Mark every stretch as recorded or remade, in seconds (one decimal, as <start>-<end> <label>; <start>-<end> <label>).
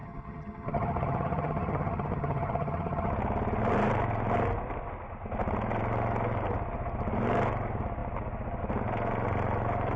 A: 0.0-3.1 remade; 3.1-10.0 recorded